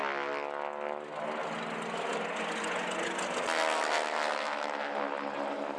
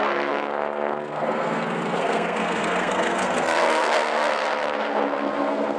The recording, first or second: first